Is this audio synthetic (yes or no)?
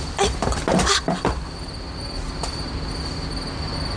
no